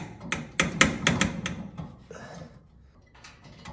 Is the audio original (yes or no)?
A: yes